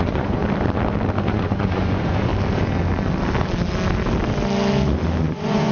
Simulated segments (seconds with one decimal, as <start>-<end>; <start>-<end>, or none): 0.0-0.4; 1.2-2.3; 5.2-5.7